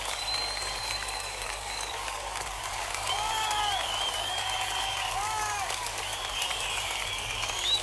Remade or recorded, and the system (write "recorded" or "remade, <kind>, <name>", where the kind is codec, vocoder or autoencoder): remade, codec, DAC